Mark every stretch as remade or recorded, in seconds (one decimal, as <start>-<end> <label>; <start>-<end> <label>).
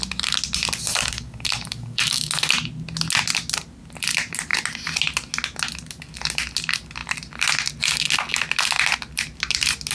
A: 0.0-0.9 recorded; 0.9-2.2 remade; 2.2-9.9 recorded